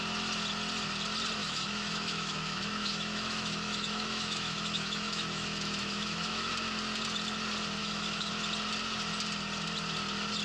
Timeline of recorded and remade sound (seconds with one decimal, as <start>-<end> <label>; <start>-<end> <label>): 0.0-1.4 recorded; 1.4-6.5 remade; 6.5-7.8 recorded; 7.8-8.3 remade; 8.3-10.4 recorded